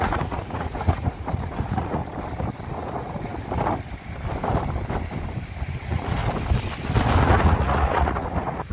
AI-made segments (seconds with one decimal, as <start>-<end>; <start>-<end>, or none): 0.0-2.0; 2.7-3.3; 5.8-6.2; 7.2-8.7